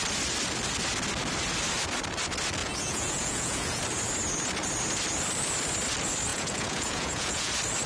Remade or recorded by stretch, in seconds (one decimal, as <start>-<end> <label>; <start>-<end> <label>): 0.0-2.6 recorded; 2.6-3.8 remade; 3.8-6.3 recorded; 6.3-7.5 remade; 7.5-7.9 recorded